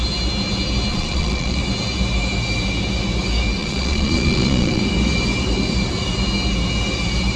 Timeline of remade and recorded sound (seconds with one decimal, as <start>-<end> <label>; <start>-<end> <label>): 0.0-0.9 recorded; 0.9-1.6 remade; 1.6-3.6 recorded; 3.6-4.8 remade; 4.8-7.4 recorded

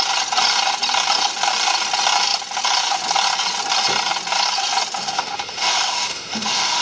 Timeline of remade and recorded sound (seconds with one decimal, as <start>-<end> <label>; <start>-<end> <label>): 0.0-5.0 recorded; 5.0-6.8 remade